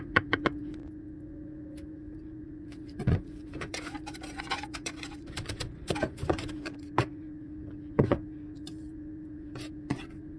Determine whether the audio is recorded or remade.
remade